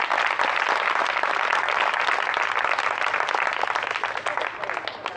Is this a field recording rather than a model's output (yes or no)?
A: yes